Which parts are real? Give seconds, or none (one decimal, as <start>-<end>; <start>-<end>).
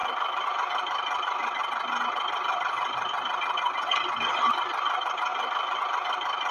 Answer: 0.0-6.5